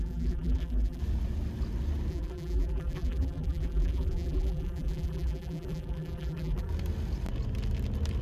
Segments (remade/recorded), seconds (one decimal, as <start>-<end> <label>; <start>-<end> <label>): 0.0-1.0 remade; 1.0-2.1 recorded; 2.1-6.7 remade; 6.7-8.2 recorded